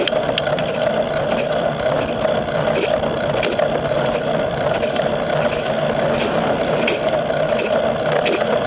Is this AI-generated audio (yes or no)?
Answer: no